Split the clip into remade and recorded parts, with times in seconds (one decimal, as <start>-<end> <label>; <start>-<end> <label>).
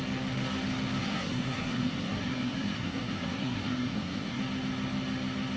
0.0-1.0 recorded; 1.0-4.4 remade; 4.4-5.6 recorded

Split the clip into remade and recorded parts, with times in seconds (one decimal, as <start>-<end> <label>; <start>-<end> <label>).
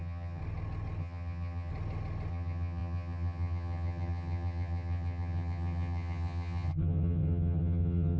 0.0-0.4 remade; 0.4-1.0 recorded; 1.0-1.7 remade; 1.7-2.3 recorded; 2.3-8.2 remade